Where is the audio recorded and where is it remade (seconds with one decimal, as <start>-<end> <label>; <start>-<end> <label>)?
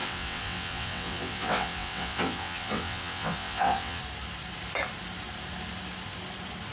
0.0-4.0 remade; 4.0-6.7 recorded